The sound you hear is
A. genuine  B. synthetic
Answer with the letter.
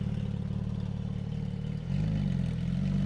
A